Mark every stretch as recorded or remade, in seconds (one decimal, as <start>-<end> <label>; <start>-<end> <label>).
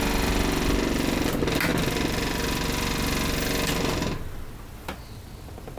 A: 0.0-5.8 recorded